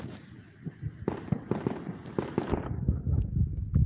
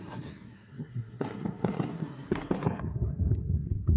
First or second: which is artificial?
second